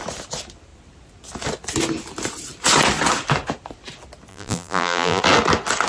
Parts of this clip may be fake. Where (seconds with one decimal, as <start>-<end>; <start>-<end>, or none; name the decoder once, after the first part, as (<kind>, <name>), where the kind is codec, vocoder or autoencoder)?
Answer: 4.3-5.2 (vocoder, BigVGAN v2)